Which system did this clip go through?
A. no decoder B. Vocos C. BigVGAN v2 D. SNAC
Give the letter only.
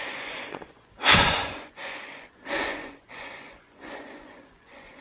B